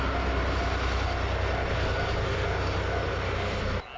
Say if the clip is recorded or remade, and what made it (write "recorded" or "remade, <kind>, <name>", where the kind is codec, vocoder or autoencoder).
recorded